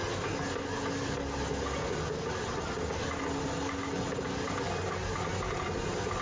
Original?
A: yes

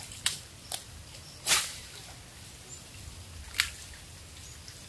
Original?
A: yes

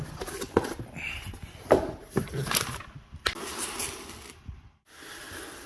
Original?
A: yes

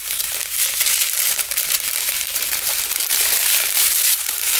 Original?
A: no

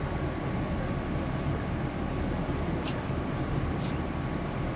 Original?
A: no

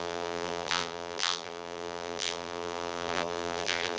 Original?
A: no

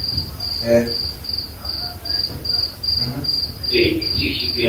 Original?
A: yes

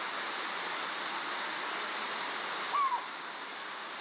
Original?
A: yes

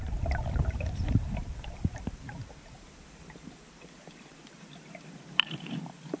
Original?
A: no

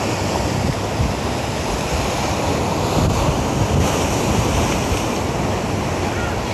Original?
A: yes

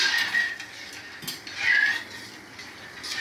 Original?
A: yes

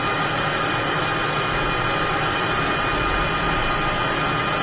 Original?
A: yes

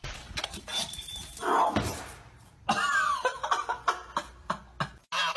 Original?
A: yes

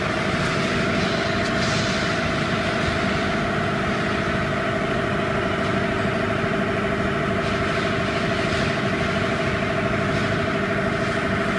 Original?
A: yes